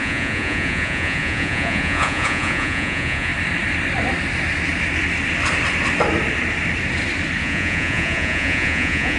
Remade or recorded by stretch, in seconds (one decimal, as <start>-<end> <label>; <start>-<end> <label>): 0.0-3.3 remade; 3.3-7.4 recorded; 7.4-9.2 remade